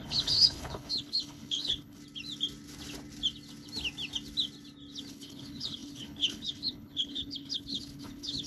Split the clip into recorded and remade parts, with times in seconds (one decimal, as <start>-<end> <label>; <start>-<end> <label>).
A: 0.0-2.0 remade; 2.0-5.1 recorded; 5.1-8.5 remade